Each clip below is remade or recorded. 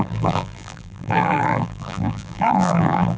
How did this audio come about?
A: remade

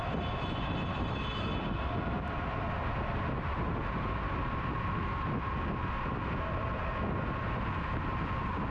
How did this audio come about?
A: recorded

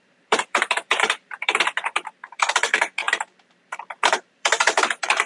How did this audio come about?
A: remade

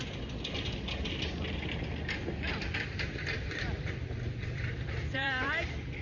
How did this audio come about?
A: remade